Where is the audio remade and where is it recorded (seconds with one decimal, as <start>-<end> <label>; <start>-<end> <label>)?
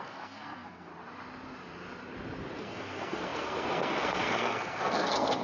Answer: 0.0-0.9 remade; 0.9-2.6 recorded; 2.6-5.4 remade